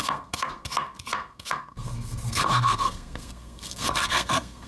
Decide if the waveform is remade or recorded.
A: remade